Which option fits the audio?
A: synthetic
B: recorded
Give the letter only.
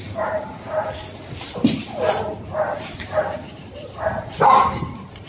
A